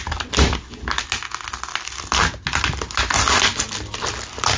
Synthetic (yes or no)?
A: no